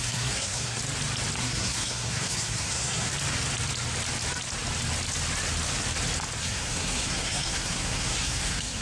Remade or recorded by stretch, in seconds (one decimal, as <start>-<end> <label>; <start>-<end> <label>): 0.0-0.8 remade; 0.8-1.4 recorded; 1.4-3.1 remade; 3.1-6.4 recorded; 6.4-8.8 remade

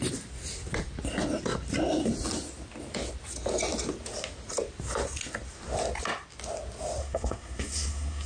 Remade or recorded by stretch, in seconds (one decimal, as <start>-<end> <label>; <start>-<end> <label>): 0.0-7.0 recorded; 7.0-8.3 remade

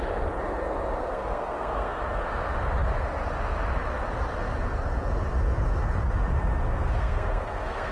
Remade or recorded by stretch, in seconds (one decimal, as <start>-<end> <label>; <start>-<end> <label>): 0.0-1.0 recorded; 1.0-2.0 remade; 2.0-6.7 recorded; 6.7-7.9 remade

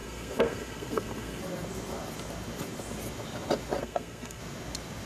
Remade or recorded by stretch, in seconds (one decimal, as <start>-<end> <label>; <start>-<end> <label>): 0.0-1.4 remade; 1.4-3.8 recorded; 3.8-4.4 remade; 4.4-5.1 recorded

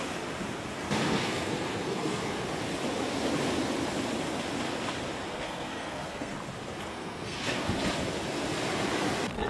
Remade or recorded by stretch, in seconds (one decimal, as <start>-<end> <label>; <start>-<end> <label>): 0.0-1.2 recorded; 1.2-2.4 remade; 2.4-5.3 recorded; 5.3-6.3 remade; 6.3-6.9 recorded; 6.9-7.7 remade; 7.7-9.5 recorded